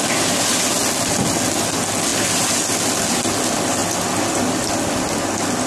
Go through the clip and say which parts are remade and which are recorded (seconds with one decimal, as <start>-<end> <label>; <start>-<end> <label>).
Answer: 0.0-5.7 recorded